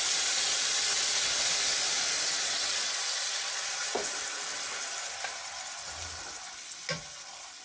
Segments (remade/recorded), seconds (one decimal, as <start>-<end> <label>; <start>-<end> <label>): 0.0-7.6 recorded